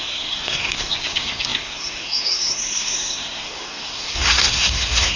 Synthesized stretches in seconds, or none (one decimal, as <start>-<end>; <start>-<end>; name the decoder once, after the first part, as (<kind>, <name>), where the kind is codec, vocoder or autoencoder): 0.0-5.2 (codec, SNAC)